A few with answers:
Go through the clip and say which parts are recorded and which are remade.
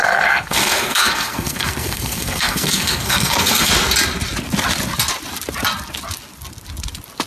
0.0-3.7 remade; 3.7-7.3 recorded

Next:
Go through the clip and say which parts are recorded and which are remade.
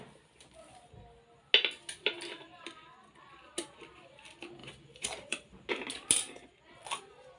0.0-4.6 recorded; 4.6-5.7 remade; 5.7-7.4 recorded